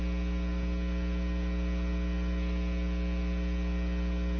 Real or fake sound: real